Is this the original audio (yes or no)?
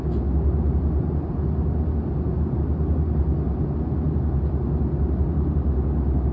yes